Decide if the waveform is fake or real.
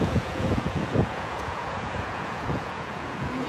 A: fake